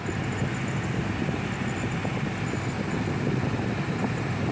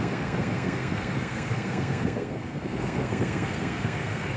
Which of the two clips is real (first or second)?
first